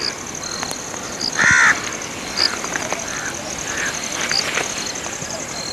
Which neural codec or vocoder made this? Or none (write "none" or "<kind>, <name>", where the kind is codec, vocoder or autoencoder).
none